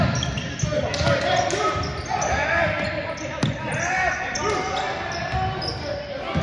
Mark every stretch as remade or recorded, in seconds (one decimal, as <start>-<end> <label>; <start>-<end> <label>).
0.0-6.4 recorded